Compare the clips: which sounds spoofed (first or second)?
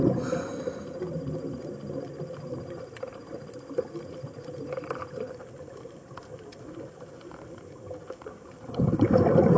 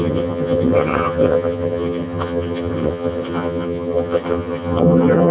second